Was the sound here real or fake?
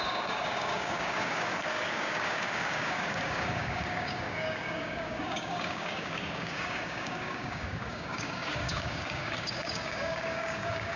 fake